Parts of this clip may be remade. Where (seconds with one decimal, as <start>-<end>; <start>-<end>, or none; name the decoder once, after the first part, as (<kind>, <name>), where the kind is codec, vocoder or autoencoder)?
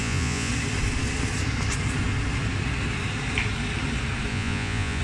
0.0-0.5 (vocoder, Vocos); 4.3-5.0